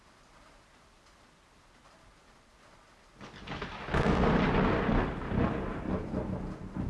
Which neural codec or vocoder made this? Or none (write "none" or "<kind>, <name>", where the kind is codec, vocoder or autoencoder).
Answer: none